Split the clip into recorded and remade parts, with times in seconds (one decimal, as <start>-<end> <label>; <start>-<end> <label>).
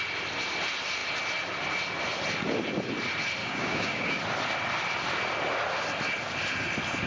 0.0-3.4 recorded; 3.4-4.2 remade; 4.2-7.1 recorded